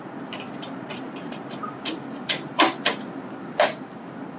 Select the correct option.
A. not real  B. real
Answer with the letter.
A